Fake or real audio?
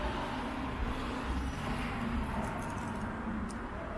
real